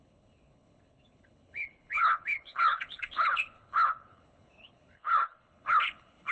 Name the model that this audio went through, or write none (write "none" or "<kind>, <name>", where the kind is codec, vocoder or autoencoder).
codec, HILCodec